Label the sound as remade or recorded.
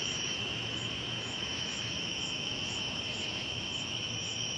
remade